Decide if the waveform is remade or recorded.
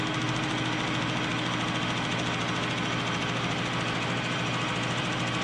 recorded